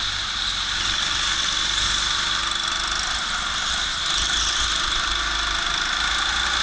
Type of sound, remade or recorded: recorded